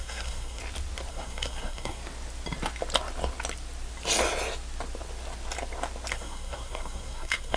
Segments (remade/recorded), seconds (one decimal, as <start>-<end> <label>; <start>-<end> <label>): 0.0-0.6 remade; 0.6-1.1 recorded; 1.1-2.0 remade; 2.0-6.1 recorded; 6.1-7.6 remade